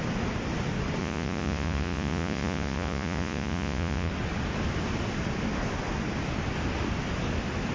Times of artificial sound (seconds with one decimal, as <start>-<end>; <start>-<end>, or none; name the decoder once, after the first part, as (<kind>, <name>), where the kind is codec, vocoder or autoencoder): 1.0-4.1 (vocoder, Vocos)